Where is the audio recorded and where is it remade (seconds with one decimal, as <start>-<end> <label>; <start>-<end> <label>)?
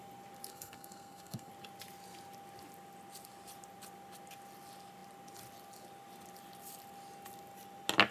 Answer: 0.0-0.5 recorded; 0.5-1.5 remade; 1.5-8.1 recorded